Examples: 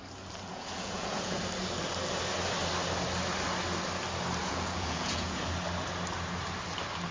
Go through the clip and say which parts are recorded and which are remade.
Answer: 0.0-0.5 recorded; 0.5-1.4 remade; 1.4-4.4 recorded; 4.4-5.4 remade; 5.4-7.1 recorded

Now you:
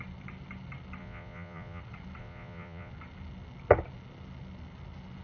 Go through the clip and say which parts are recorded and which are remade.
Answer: 0.0-1.0 recorded; 1.0-1.8 remade; 1.8-2.2 recorded; 2.2-2.9 remade; 2.9-5.2 recorded

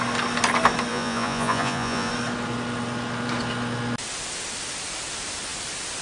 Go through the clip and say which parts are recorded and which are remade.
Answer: 0.0-0.9 recorded; 0.9-2.1 remade; 2.1-6.0 recorded

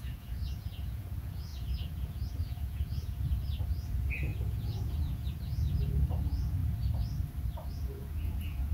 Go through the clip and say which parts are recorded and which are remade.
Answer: 0.0-3.3 remade; 3.3-3.8 recorded; 3.8-6.6 remade; 6.6-7.7 recorded; 7.7-8.7 remade

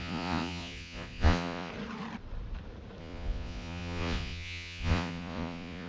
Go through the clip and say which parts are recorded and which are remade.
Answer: 0.0-1.7 remade; 1.7-3.0 recorded; 3.0-5.9 remade

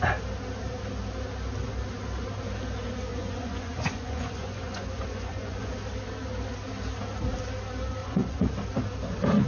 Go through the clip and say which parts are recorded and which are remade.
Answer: 0.0-3.1 recorded; 3.1-5.7 remade; 5.7-8.0 recorded; 8.0-8.5 remade; 8.5-9.5 recorded